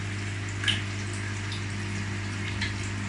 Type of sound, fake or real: real